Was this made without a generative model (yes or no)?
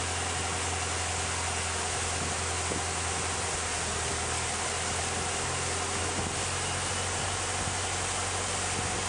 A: yes